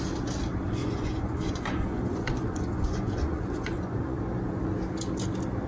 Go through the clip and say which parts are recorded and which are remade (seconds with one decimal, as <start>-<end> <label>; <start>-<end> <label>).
0.0-0.8 recorded; 0.8-4.2 remade; 4.2-5.7 recorded